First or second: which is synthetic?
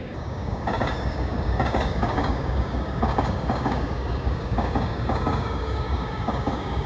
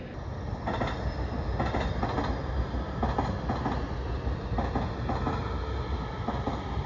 first